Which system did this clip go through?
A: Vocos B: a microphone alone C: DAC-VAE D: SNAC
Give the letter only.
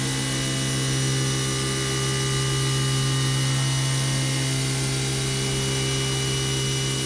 B